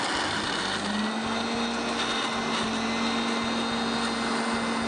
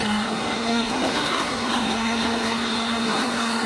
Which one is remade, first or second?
second